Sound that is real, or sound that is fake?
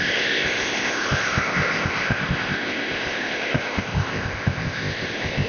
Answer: fake